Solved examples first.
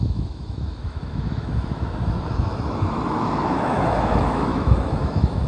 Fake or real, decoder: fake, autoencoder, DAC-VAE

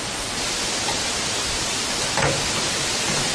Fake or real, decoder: real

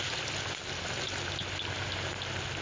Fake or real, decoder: real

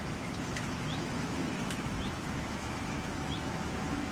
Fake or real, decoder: fake, autoencoder, DAC-VAE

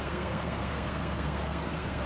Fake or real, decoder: fake, codec, SNAC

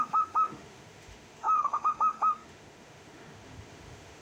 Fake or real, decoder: fake, autoencoder, DAC-VAE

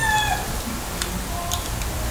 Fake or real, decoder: real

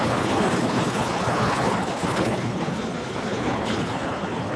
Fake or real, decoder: fake, codec, HILCodec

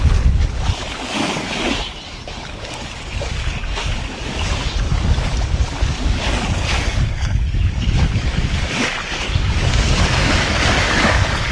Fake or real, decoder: fake, codec, DAC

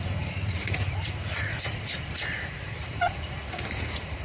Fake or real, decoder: fake, vocoder, Vocos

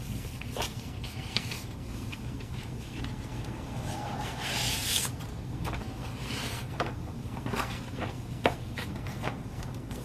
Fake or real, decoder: fake, codec, SNAC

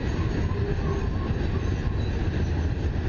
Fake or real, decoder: real